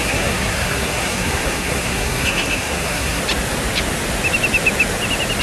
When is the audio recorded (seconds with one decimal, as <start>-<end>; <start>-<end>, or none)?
3.2-5.4